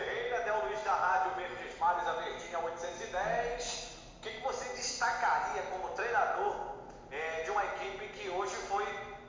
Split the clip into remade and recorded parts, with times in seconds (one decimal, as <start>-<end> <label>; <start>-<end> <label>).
0.0-9.3 recorded